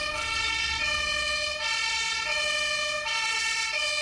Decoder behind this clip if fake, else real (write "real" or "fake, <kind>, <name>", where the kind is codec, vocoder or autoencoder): fake, vocoder, WaveNeXt